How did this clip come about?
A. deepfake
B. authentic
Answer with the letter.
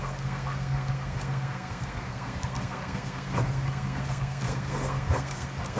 A